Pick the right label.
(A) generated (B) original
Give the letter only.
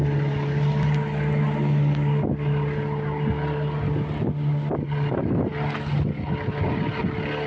B